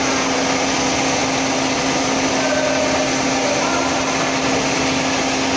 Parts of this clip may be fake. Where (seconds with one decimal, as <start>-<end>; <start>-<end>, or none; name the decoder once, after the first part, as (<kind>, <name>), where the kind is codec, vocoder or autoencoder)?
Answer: none